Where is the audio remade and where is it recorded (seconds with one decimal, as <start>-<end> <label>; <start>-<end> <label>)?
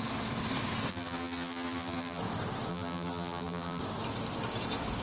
0.0-0.9 recorded; 0.9-2.2 remade; 2.2-2.7 recorded; 2.7-3.8 remade; 3.8-5.0 recorded